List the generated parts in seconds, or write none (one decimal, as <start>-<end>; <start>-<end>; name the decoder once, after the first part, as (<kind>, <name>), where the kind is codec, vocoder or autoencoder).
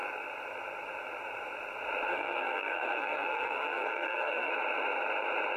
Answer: 2.1-4.5 (codec, SNAC)